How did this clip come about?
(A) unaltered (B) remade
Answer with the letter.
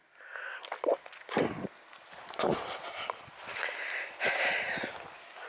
A